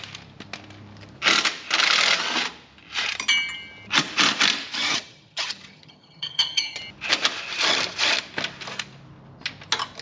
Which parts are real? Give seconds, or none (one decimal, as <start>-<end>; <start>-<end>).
0.0-4.8; 6.8-10.0